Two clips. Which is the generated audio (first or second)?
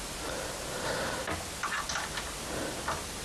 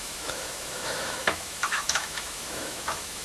second